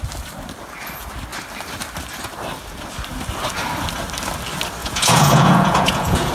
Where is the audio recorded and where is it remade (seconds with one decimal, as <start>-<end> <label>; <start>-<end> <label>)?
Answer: 0.0-4.8 recorded; 4.8-6.3 remade